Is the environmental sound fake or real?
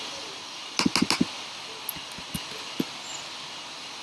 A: real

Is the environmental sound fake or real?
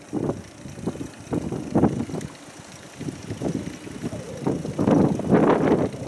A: real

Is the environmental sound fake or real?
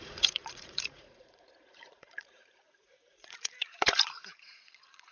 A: fake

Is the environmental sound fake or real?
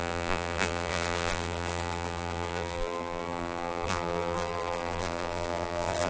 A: fake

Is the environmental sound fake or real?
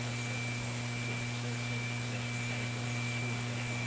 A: real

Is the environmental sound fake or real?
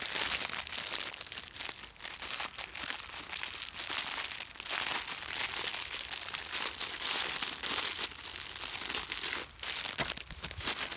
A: real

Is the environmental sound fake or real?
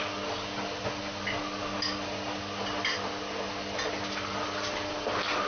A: real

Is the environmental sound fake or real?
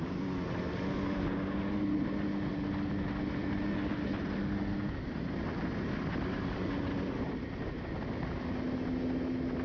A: real